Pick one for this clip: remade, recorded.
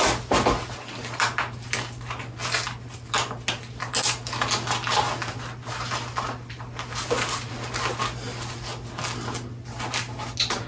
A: recorded